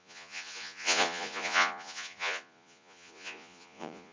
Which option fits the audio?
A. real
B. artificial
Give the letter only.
B